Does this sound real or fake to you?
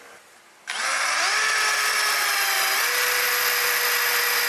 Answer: real